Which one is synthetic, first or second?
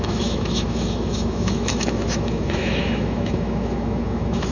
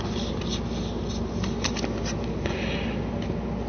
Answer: first